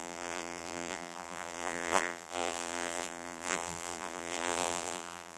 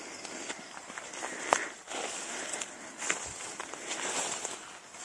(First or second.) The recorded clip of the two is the second